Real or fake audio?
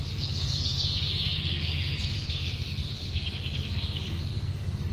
fake